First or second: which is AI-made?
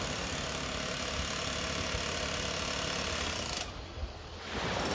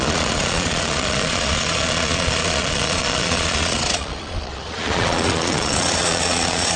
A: second